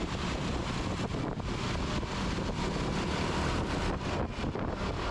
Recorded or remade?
remade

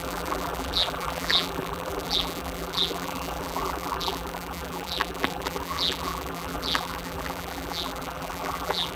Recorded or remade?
remade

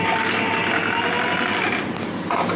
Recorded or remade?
recorded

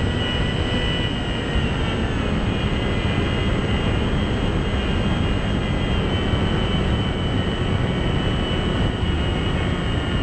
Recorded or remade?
recorded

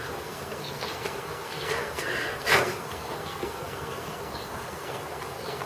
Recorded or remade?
remade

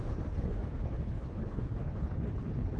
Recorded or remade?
remade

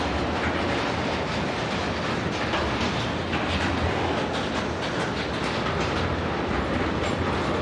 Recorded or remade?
recorded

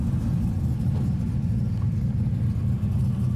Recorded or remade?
recorded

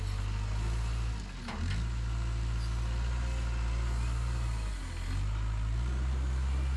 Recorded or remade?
recorded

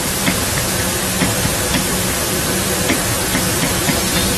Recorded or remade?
recorded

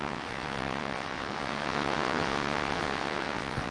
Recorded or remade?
remade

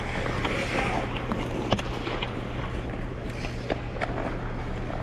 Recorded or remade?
recorded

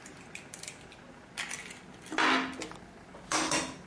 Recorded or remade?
recorded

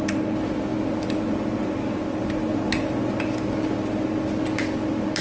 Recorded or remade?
recorded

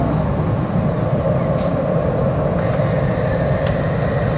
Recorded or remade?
recorded